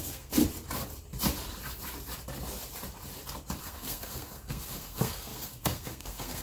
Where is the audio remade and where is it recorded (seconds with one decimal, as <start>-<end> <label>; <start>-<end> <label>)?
0.0-0.4 remade; 0.4-3.6 recorded; 3.6-6.4 remade